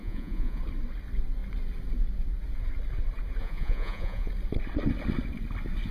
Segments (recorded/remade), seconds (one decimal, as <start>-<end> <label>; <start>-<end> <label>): 0.0-0.6 remade; 0.6-3.4 recorded; 3.4-4.3 remade; 4.3-5.9 recorded